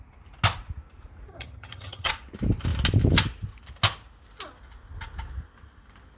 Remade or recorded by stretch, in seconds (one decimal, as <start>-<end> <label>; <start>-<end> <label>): 0.0-1.3 recorded; 1.3-2.1 remade; 2.1-6.2 recorded